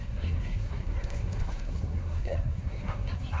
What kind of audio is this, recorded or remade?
remade